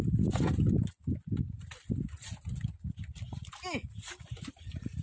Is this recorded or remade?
recorded